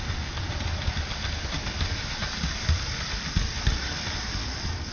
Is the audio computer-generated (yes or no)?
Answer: no